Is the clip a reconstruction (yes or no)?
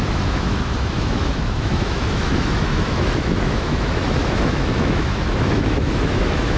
yes